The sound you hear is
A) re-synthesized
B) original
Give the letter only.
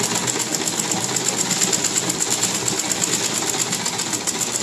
B